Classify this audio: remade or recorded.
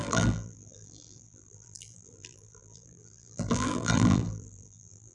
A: remade